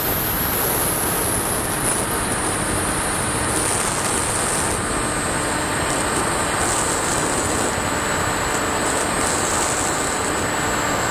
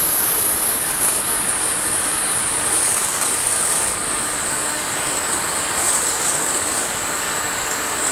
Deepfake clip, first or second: second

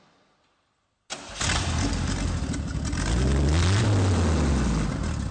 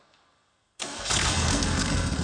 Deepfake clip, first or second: second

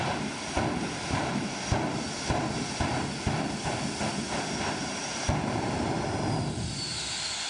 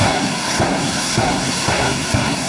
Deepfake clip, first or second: second